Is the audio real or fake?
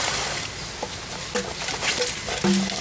real